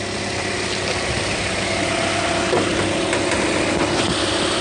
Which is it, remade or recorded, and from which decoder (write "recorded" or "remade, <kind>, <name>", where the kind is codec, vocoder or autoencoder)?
recorded